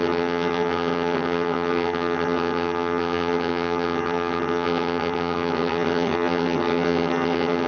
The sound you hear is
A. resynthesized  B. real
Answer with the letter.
A